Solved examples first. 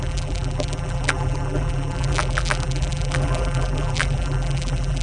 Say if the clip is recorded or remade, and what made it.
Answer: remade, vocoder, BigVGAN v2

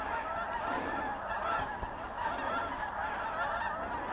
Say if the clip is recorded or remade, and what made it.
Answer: recorded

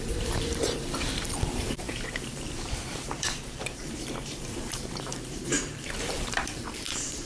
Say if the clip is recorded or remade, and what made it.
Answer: remade, vocoder, BigVGAN v2